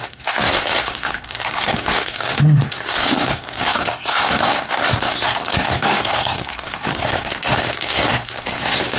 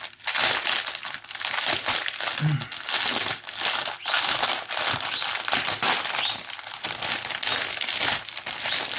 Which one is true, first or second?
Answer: second